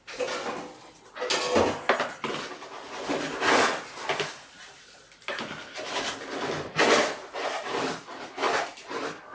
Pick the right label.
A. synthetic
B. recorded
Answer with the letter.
B